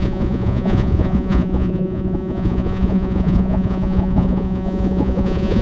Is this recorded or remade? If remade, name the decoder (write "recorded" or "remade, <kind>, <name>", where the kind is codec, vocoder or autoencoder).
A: remade, vocoder, Vocos